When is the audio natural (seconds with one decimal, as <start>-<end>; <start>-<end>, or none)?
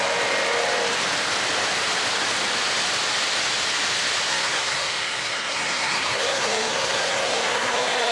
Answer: 0.0-4.3